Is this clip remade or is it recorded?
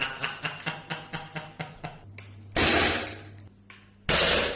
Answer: recorded